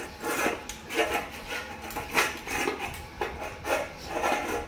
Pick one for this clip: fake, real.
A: real